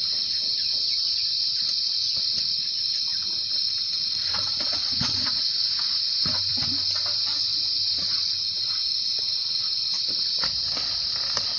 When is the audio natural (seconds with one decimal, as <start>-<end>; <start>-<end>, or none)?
0.0-3.1; 6.3-7.8; 9.0-11.6